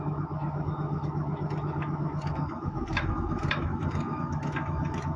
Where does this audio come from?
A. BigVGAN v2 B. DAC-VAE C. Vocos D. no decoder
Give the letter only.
B